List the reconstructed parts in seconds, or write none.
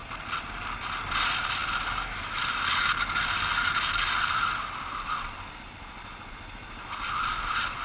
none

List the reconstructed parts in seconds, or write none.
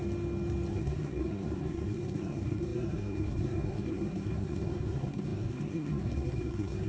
0.7-6.9 (codec, SNAC)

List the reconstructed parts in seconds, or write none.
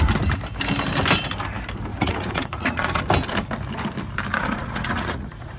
1.9-3.0 (vocoder, Vocos); 4.3-5.6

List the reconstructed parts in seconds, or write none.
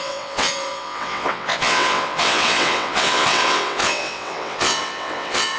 0.0-5.6 (vocoder, WaveNeXt)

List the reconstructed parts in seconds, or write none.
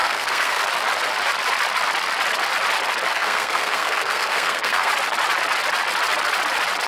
0.0-0.6 (codec, SNAC); 3.1-4.9